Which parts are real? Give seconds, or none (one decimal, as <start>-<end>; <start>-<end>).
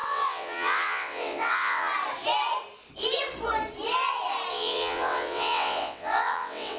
1.9-4.5